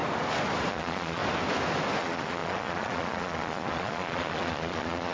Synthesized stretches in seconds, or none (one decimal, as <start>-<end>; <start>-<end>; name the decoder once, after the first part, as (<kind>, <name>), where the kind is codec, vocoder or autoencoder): 0.7-1.2 (vocoder, Vocos); 2.0-5.1